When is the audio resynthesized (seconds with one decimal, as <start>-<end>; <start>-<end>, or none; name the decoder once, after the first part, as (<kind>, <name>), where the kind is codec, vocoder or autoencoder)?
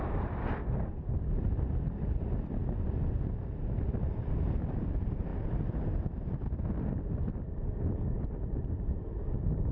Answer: 0.0-2.6 (vocoder, BigVGAN v2); 3.3-5.3; 7.1-9.7